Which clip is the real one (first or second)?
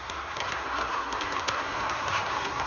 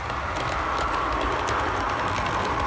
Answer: second